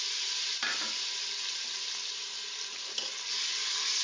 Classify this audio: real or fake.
real